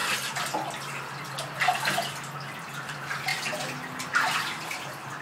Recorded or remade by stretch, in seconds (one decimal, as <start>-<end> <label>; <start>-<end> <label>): 0.0-2.6 recorded; 2.6-3.3 remade; 3.3-4.1 recorded; 4.1-5.2 remade